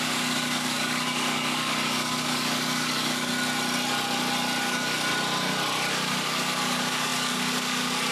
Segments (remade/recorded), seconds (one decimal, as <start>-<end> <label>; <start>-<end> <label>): 0.0-3.3 remade; 3.3-4.6 recorded; 4.6-5.1 remade; 5.1-5.9 recorded; 5.9-8.1 remade